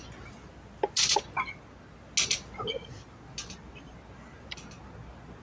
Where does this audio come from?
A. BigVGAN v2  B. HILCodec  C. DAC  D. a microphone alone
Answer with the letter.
D